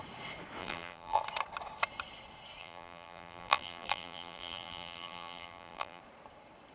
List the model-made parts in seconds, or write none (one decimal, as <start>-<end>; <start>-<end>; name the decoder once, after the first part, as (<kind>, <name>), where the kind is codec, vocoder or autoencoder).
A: 0.6-1.2 (vocoder, BigVGAN v2); 2.6-6.0